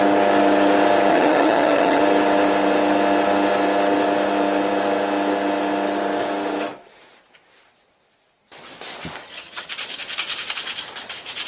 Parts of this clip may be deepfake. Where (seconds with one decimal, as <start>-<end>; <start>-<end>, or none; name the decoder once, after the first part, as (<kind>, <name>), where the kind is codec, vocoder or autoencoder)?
1.1-2.0 (vocoder, HiFi-GAN); 9.2-9.7